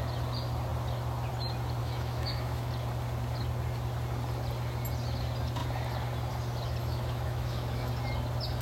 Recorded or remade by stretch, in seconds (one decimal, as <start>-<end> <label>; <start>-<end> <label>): 0.0-1.8 recorded; 1.8-2.7 remade; 2.7-6.8 recorded; 6.8-7.9 remade; 7.9-8.6 recorded